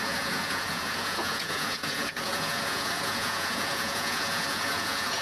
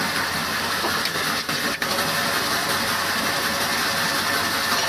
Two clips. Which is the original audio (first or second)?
second